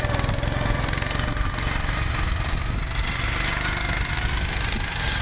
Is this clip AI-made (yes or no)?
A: no